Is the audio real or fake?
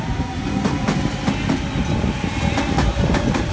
real